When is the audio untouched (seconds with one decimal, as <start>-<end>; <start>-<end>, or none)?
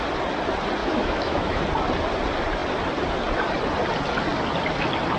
0.0-0.8; 1.6-5.2